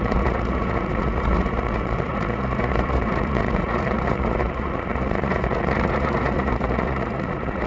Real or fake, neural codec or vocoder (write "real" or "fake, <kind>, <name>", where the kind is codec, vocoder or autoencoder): fake, vocoder, Vocos